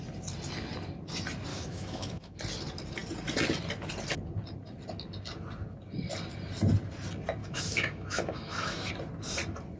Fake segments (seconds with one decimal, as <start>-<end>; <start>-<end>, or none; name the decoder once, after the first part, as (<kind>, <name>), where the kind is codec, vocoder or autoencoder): 1.5-2.4 (autoencoder, DAC-VAE); 7.4-8.9